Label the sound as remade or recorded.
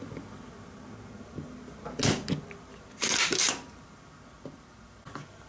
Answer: recorded